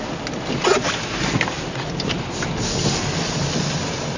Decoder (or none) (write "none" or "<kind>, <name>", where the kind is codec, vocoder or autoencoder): none